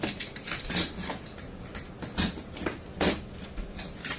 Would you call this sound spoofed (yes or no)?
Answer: no